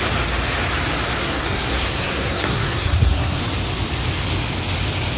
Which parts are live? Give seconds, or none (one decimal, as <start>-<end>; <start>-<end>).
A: 0.0-1.2; 3.4-5.2